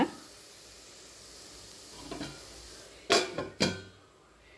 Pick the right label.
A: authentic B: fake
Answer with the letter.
A